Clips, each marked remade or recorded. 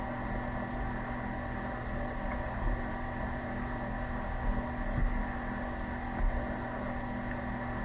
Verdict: recorded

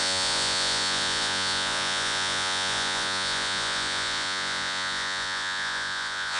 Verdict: remade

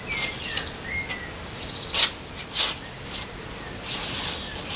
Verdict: recorded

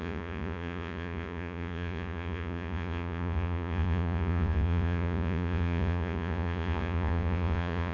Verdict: remade